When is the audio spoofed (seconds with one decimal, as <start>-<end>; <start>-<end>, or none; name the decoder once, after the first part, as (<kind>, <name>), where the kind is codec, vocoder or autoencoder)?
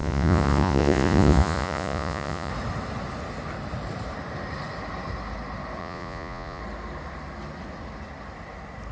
0.0-2.5 (vocoder, Vocos); 5.8-6.6